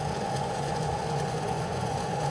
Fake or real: fake